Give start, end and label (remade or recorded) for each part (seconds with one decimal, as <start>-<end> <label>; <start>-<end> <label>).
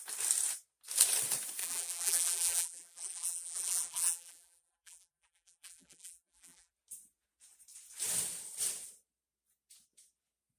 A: 0.0-1.6 recorded; 1.6-6.7 remade; 6.7-10.6 recorded